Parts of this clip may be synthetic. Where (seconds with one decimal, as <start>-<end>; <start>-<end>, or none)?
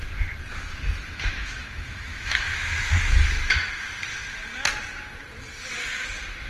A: 0.5-2.7